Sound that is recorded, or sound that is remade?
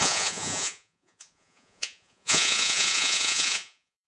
remade